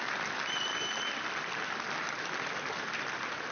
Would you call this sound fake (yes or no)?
no